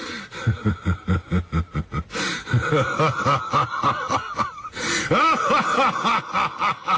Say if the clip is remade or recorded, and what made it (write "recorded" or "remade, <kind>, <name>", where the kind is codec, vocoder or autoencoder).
recorded